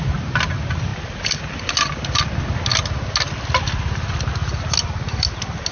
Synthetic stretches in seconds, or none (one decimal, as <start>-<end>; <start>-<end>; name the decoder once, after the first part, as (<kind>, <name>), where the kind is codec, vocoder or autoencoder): none